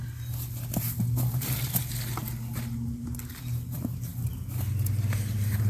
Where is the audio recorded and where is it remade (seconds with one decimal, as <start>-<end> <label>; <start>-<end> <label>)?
0.0-3.4 recorded; 3.4-4.1 remade; 4.1-5.3 recorded; 5.3-5.7 remade